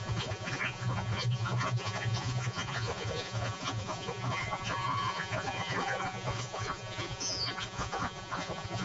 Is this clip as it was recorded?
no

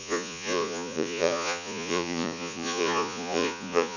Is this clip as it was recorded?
no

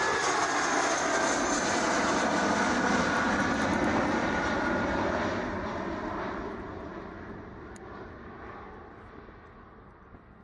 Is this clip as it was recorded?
yes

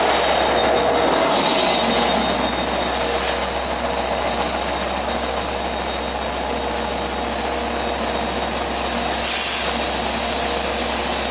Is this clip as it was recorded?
yes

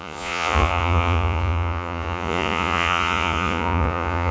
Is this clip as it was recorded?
no